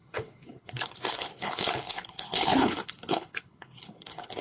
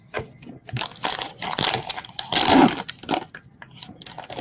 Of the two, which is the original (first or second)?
second